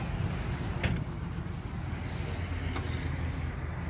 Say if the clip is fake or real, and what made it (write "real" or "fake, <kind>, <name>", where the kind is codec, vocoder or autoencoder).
real